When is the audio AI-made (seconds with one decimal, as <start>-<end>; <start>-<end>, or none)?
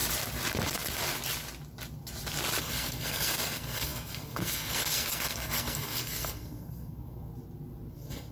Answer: 2.6-7.3; 7.9-8.3